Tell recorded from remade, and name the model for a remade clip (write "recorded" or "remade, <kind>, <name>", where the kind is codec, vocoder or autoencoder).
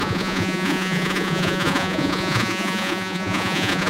remade, vocoder, Vocos